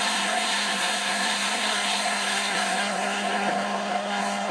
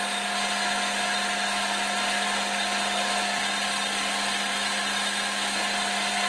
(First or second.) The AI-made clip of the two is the first